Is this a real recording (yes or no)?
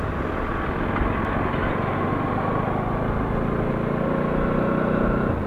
yes